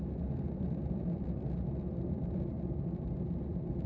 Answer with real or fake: real